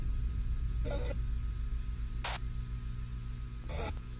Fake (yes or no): no